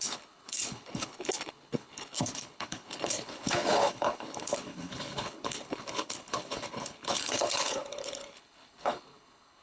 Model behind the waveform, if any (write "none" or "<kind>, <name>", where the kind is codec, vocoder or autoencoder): codec, HILCodec